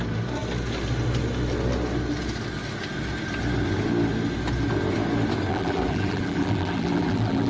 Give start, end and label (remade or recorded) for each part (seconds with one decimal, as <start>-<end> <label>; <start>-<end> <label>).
0.0-5.5 recorded; 5.5-7.5 remade